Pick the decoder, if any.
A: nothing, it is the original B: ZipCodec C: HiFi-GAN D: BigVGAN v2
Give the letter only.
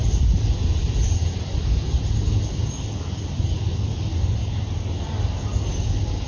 A